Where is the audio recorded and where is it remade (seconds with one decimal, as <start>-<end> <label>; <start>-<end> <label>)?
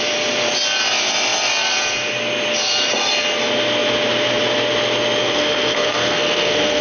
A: 0.0-5.2 recorded; 5.2-6.8 remade